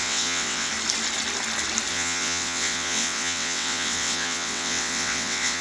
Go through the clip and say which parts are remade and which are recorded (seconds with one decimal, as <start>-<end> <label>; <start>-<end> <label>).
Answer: 0.0-0.7 remade; 0.7-1.9 recorded; 1.9-5.6 remade